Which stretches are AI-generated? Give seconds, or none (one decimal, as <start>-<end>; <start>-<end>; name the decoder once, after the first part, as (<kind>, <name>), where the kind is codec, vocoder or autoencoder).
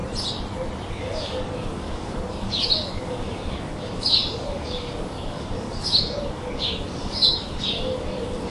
0.9-8.5 (codec, DAC)